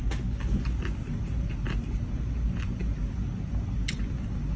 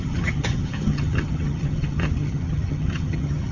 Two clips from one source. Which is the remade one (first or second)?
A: second